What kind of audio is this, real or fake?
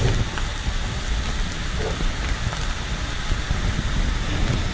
real